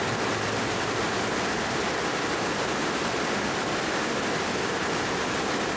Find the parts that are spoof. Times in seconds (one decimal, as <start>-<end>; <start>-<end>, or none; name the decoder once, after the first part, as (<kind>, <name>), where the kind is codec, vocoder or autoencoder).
none